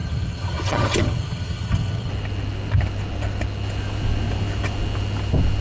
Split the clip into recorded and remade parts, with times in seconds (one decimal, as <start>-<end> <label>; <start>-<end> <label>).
0.0-2.1 remade; 2.1-5.6 recorded